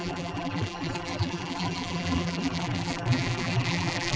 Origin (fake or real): fake